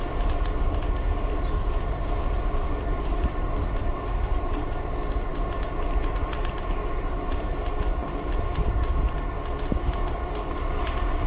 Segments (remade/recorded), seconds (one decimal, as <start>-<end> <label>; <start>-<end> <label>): 0.0-11.3 recorded